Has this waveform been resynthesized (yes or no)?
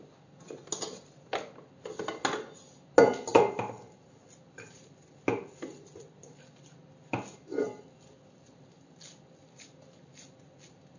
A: no